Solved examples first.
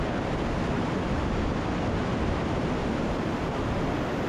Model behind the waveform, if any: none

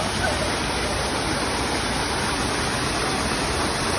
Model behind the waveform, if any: none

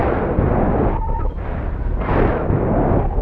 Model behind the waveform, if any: none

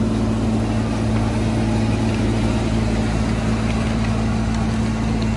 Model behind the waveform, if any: none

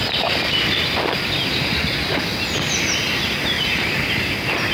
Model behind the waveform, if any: none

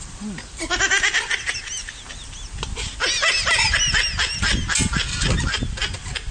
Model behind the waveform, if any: none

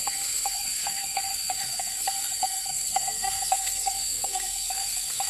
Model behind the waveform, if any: codec, SNAC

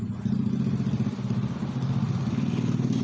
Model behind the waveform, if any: none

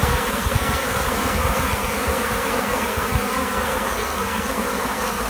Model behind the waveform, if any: codec, SNAC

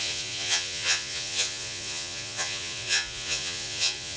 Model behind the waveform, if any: vocoder, Vocos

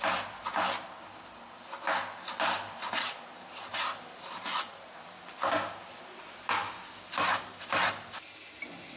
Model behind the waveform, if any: none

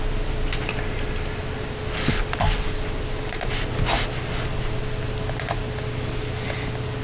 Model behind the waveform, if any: none